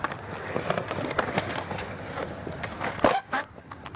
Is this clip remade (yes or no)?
no